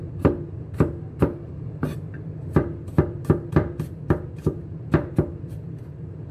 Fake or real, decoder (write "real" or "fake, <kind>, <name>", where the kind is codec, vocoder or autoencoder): fake, vocoder, BigVGAN v2